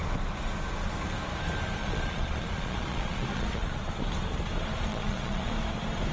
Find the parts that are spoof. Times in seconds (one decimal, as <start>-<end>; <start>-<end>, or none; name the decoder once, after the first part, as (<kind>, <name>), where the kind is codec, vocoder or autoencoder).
1.8-4.0 (vocoder, Vocos); 4.9-5.5